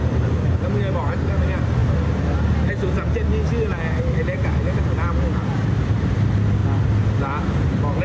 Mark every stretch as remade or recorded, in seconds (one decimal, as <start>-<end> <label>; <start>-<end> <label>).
0.0-8.0 recorded